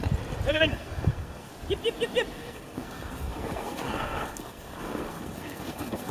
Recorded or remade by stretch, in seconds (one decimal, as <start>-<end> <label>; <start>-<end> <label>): 0.0-0.5 recorded; 0.5-1.5 remade; 1.5-2.3 recorded; 2.3-6.1 remade